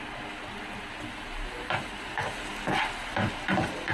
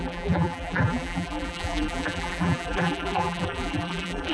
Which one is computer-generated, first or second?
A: second